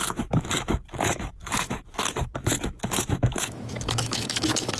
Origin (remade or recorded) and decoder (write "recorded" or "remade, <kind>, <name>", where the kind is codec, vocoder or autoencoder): remade, autoencoder, DAC-VAE